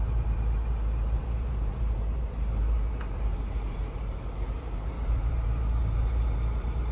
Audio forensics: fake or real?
fake